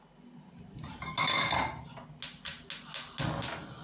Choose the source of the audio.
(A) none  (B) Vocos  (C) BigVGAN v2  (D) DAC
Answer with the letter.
A